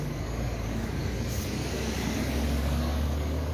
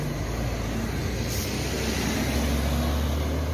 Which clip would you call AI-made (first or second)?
first